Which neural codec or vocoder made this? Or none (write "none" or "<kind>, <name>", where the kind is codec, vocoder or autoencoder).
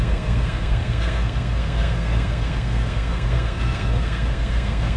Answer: codec, SNAC